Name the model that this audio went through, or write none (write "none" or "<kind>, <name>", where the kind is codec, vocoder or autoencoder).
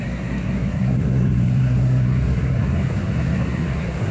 codec, SNAC